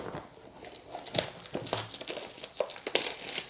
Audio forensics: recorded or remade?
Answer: recorded